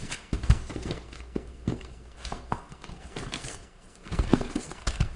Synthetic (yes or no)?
yes